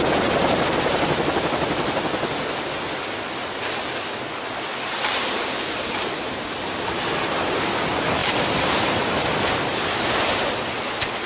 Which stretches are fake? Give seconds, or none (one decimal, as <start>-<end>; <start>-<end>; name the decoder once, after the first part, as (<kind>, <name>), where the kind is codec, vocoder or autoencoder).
8.2-10.3 (vocoder, BigVGAN v2)